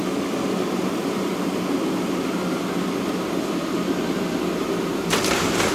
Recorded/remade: recorded